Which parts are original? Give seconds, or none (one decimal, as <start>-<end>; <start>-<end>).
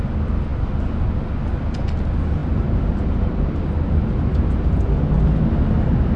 0.0-6.2